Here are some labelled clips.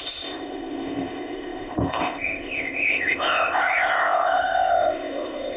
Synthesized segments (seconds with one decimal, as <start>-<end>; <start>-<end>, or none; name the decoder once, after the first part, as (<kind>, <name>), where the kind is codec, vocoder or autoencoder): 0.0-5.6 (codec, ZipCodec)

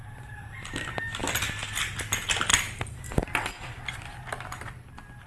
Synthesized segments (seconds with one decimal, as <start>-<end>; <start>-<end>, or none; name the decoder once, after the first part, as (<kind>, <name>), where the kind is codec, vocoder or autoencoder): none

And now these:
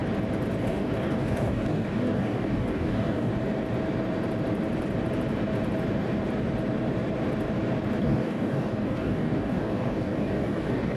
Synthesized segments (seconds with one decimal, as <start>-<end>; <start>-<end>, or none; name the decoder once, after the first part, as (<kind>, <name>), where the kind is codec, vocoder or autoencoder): 0.6-3.3 (codec, DAC); 8.0-11.0

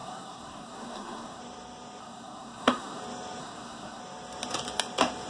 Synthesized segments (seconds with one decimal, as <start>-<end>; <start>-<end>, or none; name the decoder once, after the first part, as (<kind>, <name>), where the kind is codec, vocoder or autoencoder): 0.0-1.4 (codec, SNAC); 2.0-3.0; 3.4-4.0

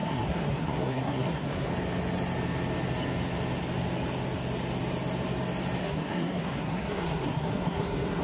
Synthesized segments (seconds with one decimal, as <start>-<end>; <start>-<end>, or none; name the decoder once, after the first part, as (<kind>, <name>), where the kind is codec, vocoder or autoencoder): 0.0-1.7 (codec, SNAC); 5.8-8.2

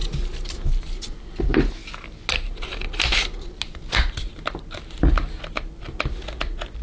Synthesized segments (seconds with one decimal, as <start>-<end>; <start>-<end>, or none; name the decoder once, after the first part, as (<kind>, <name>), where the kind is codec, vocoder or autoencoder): none